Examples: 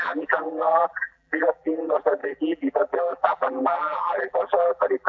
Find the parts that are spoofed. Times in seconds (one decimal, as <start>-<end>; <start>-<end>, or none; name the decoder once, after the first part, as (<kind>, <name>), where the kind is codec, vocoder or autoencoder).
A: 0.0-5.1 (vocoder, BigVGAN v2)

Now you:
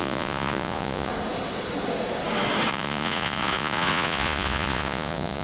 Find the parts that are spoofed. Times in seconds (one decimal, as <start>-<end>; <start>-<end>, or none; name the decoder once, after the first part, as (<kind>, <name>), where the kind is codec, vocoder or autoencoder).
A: 0.0-1.1 (vocoder, Vocos); 2.7-5.4

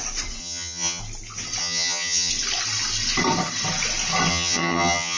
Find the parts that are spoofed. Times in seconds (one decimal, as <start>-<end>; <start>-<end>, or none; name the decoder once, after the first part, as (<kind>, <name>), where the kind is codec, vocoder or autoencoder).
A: 0.4-1.0 (vocoder, HiFi-GAN); 1.6-2.3; 4.3-5.2

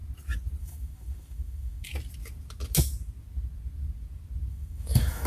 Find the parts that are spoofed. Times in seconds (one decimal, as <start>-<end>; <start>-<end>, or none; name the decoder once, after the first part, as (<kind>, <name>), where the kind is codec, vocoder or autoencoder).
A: 0.6-1.9 (autoencoder, DAC-VAE); 4.5-5.3

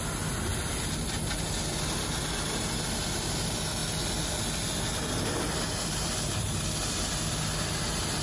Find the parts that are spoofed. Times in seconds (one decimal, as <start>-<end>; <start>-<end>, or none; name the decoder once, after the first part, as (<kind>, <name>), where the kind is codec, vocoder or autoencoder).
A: none

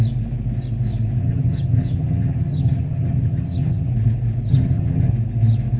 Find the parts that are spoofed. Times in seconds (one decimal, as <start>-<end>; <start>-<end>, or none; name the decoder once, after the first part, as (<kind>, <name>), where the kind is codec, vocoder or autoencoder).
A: 1.2-3.9 (vocoder, HiFi-GAN); 4.5-5.1